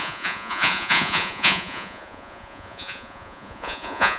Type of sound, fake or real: fake